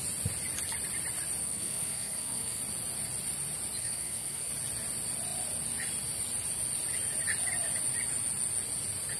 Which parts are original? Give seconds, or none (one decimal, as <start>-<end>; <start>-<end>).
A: 0.0-1.4; 2.6-3.8; 4.5-9.2